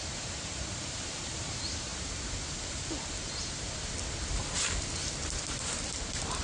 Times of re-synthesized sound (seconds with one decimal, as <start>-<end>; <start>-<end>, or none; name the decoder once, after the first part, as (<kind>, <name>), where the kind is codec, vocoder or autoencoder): none